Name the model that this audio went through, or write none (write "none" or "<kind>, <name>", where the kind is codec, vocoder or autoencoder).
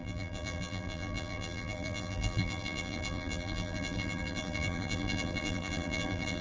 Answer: vocoder, BigVGAN v2